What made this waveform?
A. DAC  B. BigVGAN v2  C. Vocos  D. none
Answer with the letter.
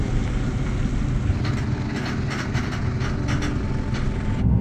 D